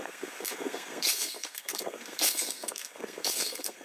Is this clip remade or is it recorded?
remade